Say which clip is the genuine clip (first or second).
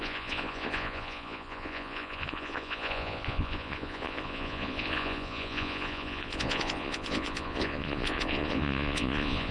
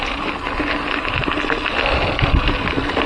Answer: second